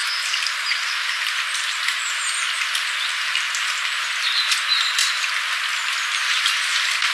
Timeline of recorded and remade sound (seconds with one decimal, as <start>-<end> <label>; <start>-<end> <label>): 0.0-4.0 remade; 4.0-7.1 recorded